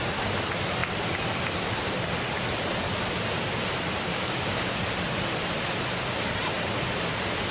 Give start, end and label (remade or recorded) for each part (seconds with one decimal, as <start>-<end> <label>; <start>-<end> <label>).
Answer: 0.0-4.1 recorded; 4.1-4.8 remade; 4.8-7.5 recorded